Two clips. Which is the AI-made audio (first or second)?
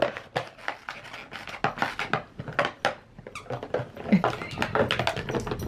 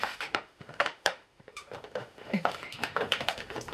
second